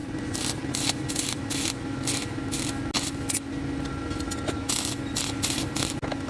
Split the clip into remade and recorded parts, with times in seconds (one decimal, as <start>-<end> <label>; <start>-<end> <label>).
0.0-1.4 remade; 1.4-6.3 recorded